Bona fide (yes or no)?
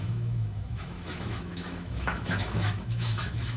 no